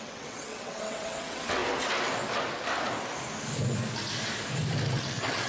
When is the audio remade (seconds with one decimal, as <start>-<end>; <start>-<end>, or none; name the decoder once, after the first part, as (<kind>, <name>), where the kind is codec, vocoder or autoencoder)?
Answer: 0.0-1.6 (vocoder, WaveNeXt); 4.9-5.5